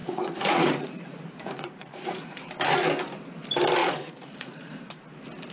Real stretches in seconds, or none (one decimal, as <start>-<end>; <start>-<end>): 2.5-3.8; 4.7-5.5